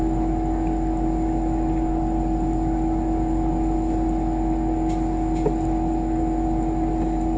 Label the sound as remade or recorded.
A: recorded